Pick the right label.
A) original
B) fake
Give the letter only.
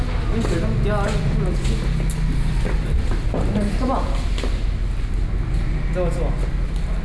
A